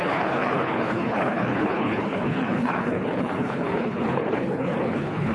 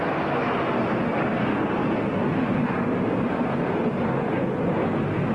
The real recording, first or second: second